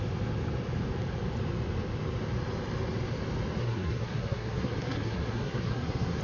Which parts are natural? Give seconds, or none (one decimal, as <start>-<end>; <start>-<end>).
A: 0.0-3.6